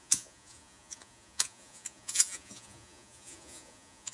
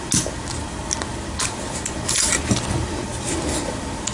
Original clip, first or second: second